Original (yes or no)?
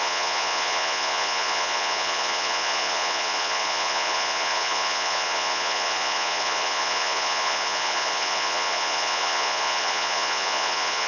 no